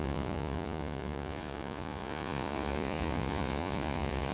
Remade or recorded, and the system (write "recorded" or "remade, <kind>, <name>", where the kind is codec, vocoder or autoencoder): remade, vocoder, Vocos